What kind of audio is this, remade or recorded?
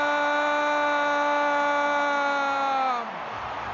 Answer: recorded